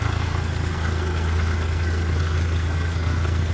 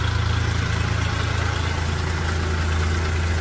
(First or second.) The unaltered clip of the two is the second